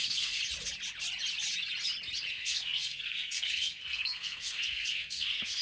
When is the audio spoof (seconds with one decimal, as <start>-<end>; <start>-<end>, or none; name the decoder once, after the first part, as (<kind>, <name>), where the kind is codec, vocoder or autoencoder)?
0.0-0.4 (codec, SNAC); 2.3-5.6